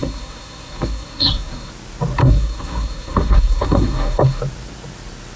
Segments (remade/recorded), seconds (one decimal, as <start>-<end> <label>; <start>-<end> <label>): 0.0-1.7 remade; 1.7-2.2 recorded; 2.2-4.4 remade; 4.4-5.4 recorded